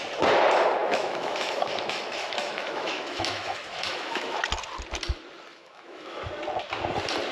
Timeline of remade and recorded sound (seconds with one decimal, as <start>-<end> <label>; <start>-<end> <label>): 0.0-0.8 recorded; 0.8-4.4 remade; 4.4-5.5 recorded; 5.5-6.3 remade; 6.3-7.3 recorded